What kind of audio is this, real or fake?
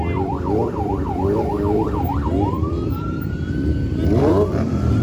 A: fake